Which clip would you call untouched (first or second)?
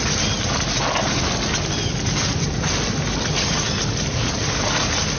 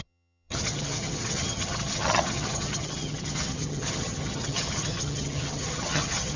first